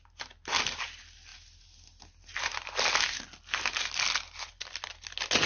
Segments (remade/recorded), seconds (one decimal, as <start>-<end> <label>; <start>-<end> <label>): 0.0-5.5 recorded